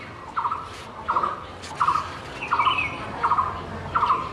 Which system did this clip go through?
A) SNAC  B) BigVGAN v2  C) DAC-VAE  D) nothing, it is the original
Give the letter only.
D